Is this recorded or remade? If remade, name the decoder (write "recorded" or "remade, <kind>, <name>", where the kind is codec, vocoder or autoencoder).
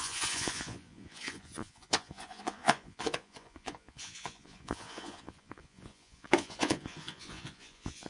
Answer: remade, vocoder, Vocos